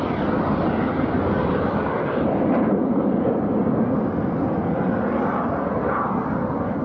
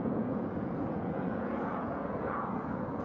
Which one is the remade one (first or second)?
second